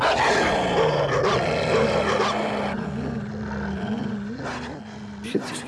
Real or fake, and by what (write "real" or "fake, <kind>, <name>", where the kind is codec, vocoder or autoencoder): real